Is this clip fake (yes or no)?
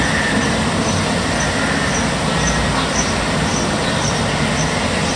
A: no